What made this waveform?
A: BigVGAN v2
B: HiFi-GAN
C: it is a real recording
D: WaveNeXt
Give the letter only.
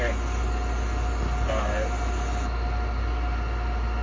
C